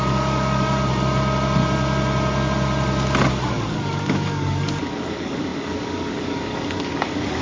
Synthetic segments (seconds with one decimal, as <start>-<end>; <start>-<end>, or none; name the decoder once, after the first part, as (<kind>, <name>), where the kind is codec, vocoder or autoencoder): 0.0-0.8 (codec, DAC); 3.3-7.4